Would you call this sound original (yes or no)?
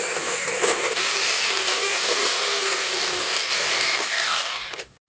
no